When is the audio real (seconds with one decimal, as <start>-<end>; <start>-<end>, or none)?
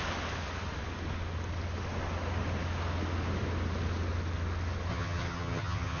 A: 0.0-4.9